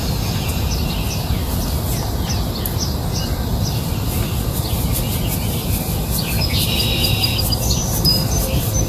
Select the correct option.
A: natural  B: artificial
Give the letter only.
A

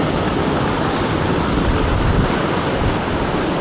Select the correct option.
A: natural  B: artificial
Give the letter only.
A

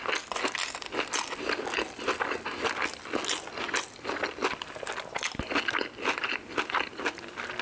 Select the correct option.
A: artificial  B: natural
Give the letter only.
B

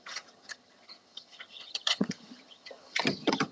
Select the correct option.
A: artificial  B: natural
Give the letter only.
A